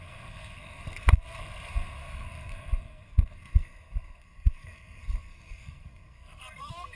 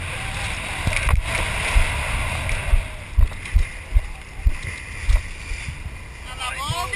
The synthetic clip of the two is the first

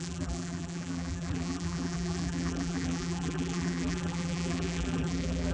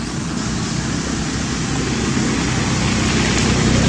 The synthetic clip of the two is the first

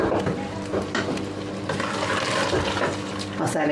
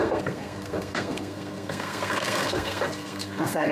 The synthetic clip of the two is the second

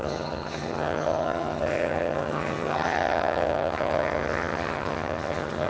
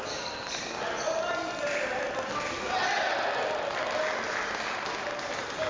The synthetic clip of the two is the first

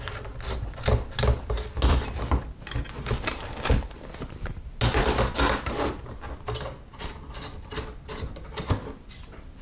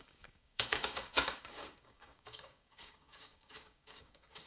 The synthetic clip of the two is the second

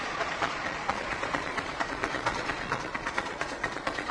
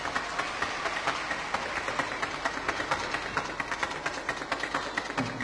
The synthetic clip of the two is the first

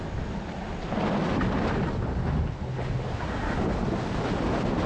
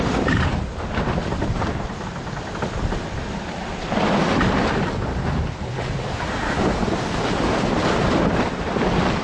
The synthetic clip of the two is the second